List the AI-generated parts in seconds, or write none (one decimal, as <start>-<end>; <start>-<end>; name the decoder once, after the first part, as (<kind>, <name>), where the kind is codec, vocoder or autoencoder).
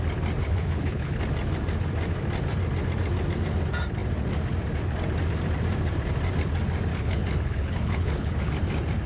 0.4-1.2 (codec, HILCodec); 6.9-8.5